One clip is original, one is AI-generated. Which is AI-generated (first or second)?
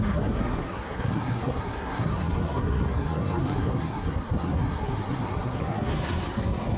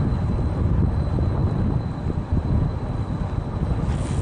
first